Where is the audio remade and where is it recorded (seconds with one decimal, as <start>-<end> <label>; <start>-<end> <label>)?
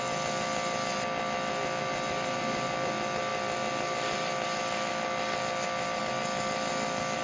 0.0-7.2 recorded